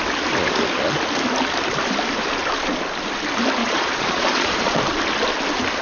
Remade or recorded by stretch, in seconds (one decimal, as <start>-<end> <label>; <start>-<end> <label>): 0.0-3.6 recorded; 3.6-4.8 remade; 4.8-5.8 recorded